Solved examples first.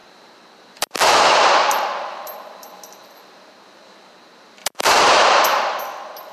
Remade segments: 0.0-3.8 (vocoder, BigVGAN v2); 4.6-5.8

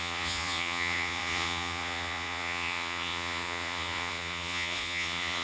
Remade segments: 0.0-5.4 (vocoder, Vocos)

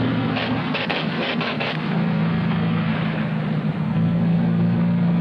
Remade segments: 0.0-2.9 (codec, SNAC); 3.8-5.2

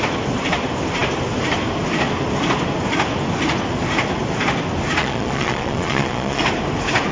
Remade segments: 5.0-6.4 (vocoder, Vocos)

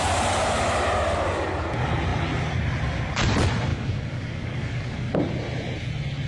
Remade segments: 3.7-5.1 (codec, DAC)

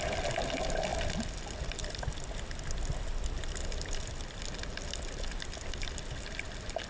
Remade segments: none

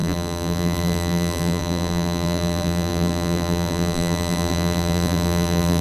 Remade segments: 0.0-5.8 (vocoder, BigVGAN v2)